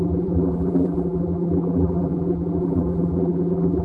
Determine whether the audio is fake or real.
fake